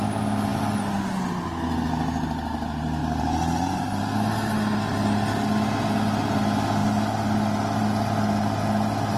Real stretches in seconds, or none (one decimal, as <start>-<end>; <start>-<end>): 0.0-3.0; 4.0-9.2